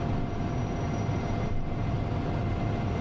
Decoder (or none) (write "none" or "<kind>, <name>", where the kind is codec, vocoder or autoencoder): none